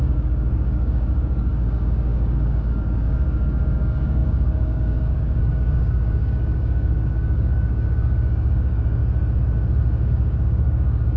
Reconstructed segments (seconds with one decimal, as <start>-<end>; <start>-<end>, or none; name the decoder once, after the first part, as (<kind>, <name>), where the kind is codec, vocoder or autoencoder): 0.0-9.0 (codec, DAC); 9.8-11.2